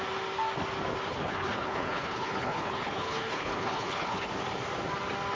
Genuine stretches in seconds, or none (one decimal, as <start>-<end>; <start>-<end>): 0.0-1.1; 4.3-5.3